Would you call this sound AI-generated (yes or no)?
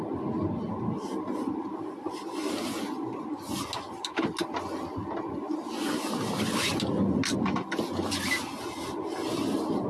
no